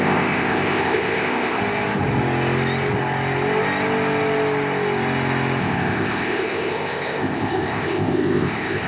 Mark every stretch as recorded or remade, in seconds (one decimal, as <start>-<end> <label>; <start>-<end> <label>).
0.0-1.6 remade; 1.6-5.6 recorded; 5.6-8.9 remade